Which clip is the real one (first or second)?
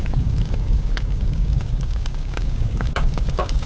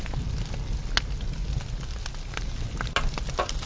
second